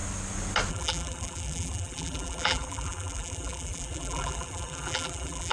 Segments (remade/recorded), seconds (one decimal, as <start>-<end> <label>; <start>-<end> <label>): 0.0-0.7 recorded; 0.7-5.5 remade